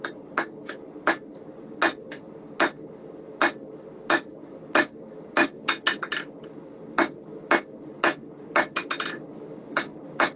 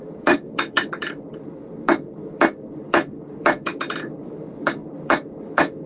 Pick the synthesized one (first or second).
second